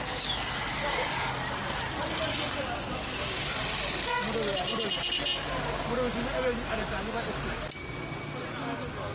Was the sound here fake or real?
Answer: real